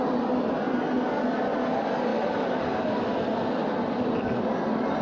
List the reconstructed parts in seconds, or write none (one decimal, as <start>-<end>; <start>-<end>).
2.1-2.7